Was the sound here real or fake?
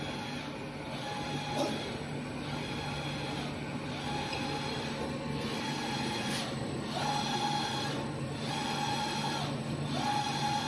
real